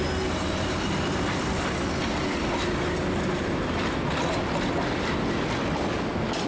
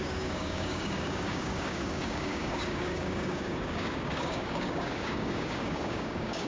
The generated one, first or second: second